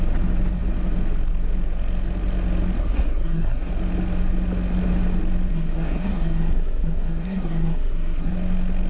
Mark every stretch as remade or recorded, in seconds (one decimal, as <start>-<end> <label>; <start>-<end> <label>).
0.0-2.8 recorded; 2.8-3.7 remade; 3.7-5.5 recorded; 5.5-8.3 remade; 8.3-8.9 recorded